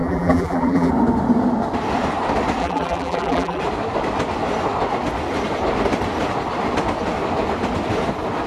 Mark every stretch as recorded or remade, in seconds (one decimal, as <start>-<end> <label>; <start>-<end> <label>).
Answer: 0.0-0.9 remade; 0.9-2.6 recorded; 2.6-3.6 remade; 3.6-8.5 recorded